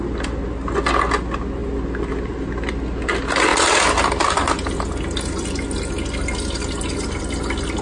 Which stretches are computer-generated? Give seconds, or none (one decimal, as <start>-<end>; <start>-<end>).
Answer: none